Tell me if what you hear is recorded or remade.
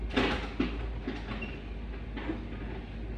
recorded